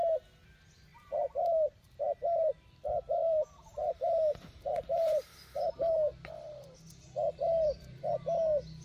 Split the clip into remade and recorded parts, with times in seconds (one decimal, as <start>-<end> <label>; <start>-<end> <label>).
0.0-0.9 recorded; 0.9-2.0 remade; 2.0-3.2 recorded; 3.2-5.9 remade; 5.9-7.4 recorded; 7.4-8.1 remade; 8.1-8.8 recorded